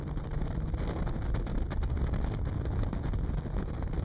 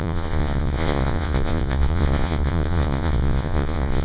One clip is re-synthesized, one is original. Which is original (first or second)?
first